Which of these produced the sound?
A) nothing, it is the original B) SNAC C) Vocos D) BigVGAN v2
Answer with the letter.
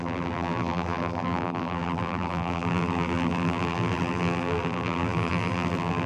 D